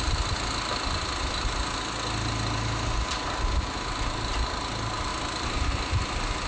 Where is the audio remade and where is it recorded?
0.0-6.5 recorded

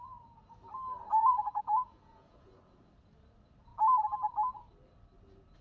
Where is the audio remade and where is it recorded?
0.0-1.2 recorded; 1.2-2.8 remade; 2.8-5.6 recorded

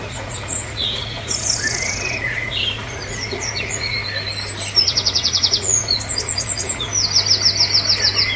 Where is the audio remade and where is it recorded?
0.0-4.0 remade; 4.0-4.8 recorded; 4.8-6.9 remade; 6.9-8.4 recorded

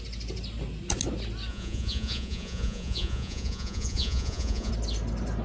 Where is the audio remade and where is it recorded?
0.0-1.5 recorded; 1.5-4.7 remade; 4.7-5.4 recorded

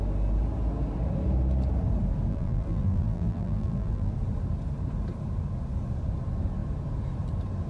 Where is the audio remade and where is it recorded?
0.0-2.3 recorded; 2.3-4.1 remade; 4.1-7.7 recorded

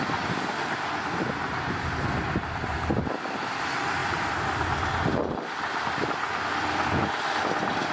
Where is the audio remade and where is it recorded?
0.0-7.9 recorded